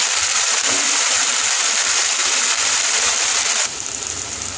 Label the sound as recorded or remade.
remade